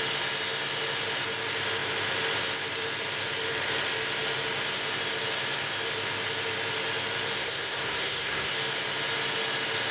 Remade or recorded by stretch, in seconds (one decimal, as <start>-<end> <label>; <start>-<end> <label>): 0.0-7.4 recorded; 7.4-8.5 remade; 8.5-9.9 recorded